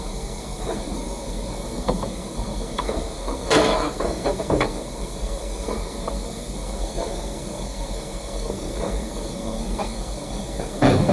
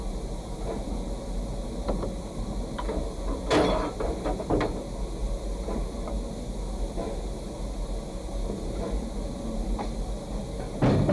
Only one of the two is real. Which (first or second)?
second